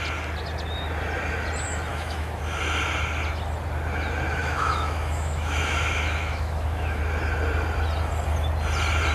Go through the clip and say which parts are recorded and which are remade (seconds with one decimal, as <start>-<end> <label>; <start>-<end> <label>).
0.0-1.9 recorded; 1.9-2.4 remade; 2.4-4.4 recorded; 4.4-7.0 remade; 7.0-9.1 recorded